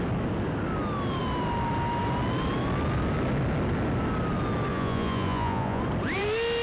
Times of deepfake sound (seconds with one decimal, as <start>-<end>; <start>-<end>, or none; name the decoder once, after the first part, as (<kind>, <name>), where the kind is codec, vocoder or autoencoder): 4.7-5.8 (vocoder, Vocos)